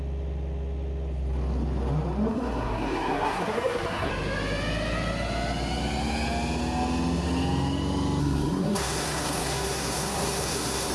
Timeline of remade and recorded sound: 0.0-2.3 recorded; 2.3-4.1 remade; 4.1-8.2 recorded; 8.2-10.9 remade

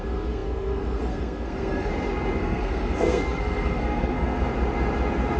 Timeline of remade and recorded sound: 0.0-1.9 remade; 1.9-2.4 recorded; 2.4-4.5 remade; 4.5-5.4 recorded

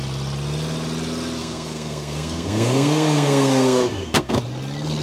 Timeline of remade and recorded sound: 0.0-1.4 recorded; 1.4-4.4 remade; 4.4-5.0 recorded

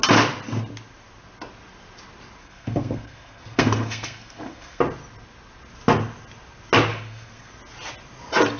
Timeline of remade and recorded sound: 0.0-2.4 recorded; 2.4-4.8 remade; 4.8-6.9 recorded; 6.9-7.5 remade; 7.5-8.6 recorded

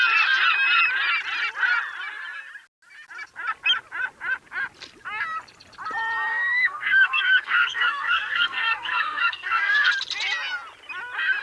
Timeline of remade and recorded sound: 0.0-6.3 recorded; 6.3-9.9 remade; 9.9-11.4 recorded